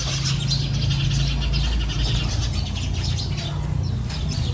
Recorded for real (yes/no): yes